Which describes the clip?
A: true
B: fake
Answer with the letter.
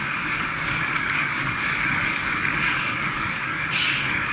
B